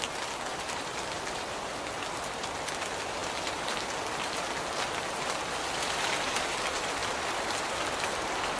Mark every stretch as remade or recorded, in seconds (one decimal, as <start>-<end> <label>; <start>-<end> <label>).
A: 0.0-8.6 recorded